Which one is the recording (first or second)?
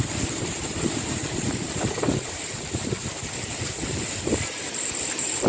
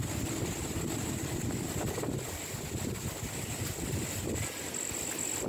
second